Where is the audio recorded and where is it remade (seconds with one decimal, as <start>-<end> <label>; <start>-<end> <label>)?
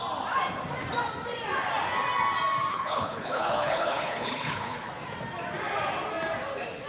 0.0-2.7 recorded; 2.7-4.9 remade; 4.9-6.9 recorded